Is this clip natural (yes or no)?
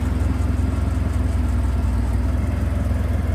yes